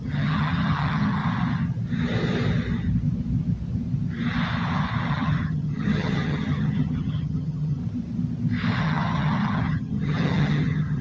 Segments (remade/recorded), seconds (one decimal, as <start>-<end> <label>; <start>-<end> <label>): 0.0-1.2 remade; 1.2-5.1 recorded; 5.1-7.8 remade; 7.8-8.8 recorded; 8.8-11.0 remade

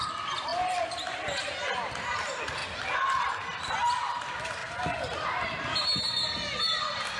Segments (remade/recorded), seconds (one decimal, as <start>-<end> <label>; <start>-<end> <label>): 0.0-7.2 recorded

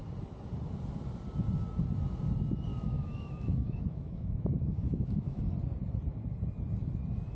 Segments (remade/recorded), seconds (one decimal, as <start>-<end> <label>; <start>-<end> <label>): 0.0-2.7 recorded; 2.7-5.4 remade; 5.4-7.3 recorded

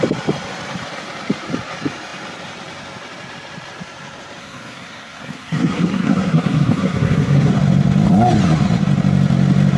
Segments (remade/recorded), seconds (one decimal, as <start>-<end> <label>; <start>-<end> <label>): 0.0-4.4 recorded; 4.4-7.5 remade; 7.5-9.8 recorded

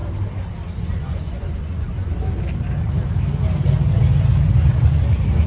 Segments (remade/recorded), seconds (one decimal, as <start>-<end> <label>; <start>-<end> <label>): 0.0-0.8 recorded; 0.8-2.1 remade; 2.1-4.5 recorded; 4.5-5.5 remade

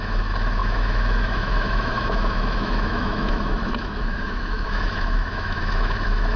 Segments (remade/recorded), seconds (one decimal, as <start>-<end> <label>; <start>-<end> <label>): 0.0-6.4 remade

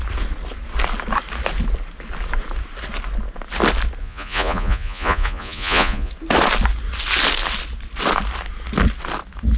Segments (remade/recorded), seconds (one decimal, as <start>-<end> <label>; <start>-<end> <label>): 0.0-4.0 recorded; 4.0-6.1 remade; 6.1-9.6 recorded